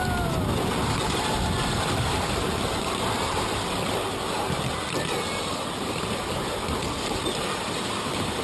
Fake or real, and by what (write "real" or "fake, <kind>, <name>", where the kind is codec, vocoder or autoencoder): real